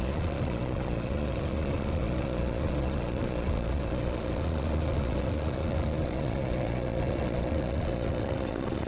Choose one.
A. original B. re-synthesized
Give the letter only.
B